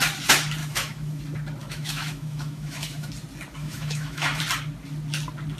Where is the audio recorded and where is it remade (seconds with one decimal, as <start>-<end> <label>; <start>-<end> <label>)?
0.0-0.6 recorded; 0.6-1.2 remade; 1.2-1.6 recorded; 1.6-3.1 remade; 3.1-3.6 recorded; 3.6-4.4 remade; 4.4-5.6 recorded